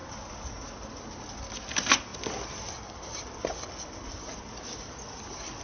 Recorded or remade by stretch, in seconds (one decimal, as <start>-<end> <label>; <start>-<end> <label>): 0.0-5.6 recorded